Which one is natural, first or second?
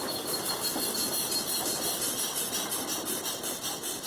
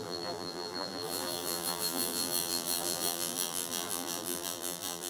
first